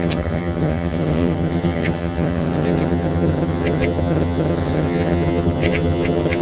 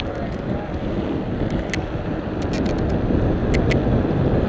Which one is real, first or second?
second